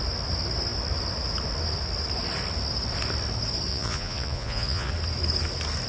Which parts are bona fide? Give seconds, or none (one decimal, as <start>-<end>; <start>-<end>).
0.0-3.7; 4.9-5.9

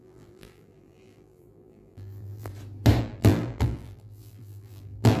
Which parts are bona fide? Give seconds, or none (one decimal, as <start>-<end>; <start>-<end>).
2.5-3.0